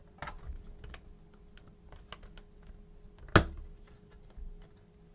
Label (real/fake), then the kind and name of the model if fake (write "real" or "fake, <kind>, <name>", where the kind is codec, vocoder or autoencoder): real